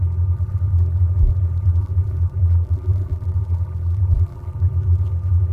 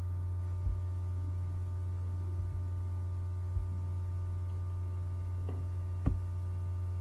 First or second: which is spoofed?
first